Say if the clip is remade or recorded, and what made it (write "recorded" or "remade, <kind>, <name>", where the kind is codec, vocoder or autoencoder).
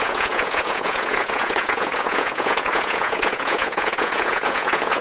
remade, vocoder, Vocos